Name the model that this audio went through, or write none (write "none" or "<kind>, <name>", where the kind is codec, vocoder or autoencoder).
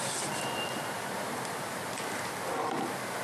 none